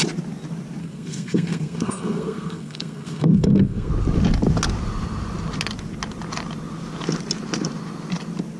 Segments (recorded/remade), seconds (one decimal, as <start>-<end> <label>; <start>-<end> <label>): 0.0-0.8 recorded; 0.8-3.9 remade; 3.9-8.6 recorded